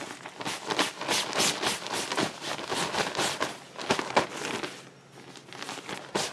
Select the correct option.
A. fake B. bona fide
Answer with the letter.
B